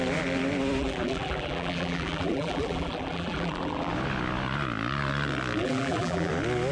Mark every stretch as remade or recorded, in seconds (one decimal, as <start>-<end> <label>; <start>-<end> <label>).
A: 0.0-0.8 recorded; 0.8-3.9 remade; 3.9-5.6 recorded; 5.6-6.3 remade; 6.3-6.7 recorded